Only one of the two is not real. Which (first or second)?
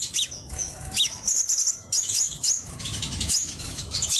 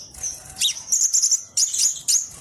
first